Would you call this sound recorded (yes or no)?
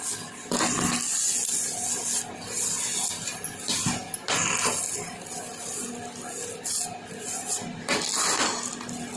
yes